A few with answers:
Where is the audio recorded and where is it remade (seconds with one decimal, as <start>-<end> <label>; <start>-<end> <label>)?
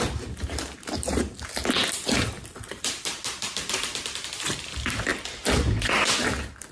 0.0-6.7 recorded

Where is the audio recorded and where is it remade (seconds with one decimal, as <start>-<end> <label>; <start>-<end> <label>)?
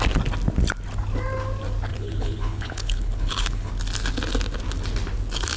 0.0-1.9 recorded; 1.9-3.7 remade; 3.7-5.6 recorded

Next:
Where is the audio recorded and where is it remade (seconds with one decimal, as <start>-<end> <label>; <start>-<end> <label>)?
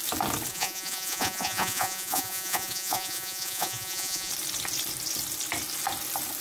0.0-0.5 recorded; 0.5-4.3 remade; 4.3-6.4 recorded